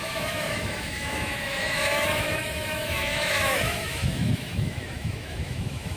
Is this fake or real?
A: fake